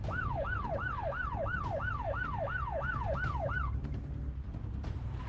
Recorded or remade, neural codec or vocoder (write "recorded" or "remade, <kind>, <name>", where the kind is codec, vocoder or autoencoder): recorded